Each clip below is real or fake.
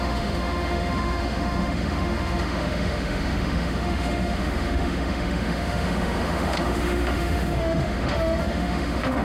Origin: fake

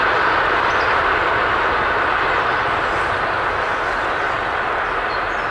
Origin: real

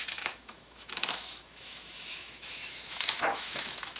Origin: fake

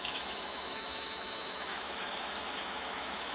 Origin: fake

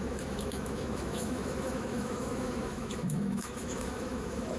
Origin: fake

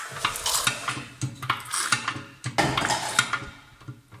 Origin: real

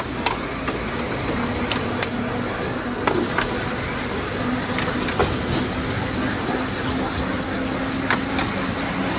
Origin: real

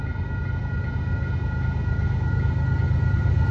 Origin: real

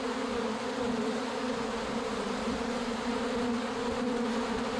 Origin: real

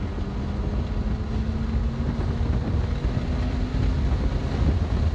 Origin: real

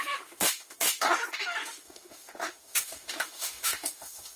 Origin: fake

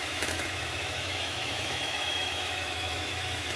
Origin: fake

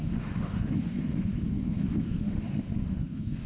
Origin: fake